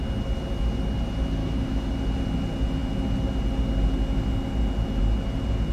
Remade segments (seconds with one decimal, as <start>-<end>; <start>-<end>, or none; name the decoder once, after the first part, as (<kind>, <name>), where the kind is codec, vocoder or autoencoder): 1.4-1.9 (autoencoder, DAC-VAE)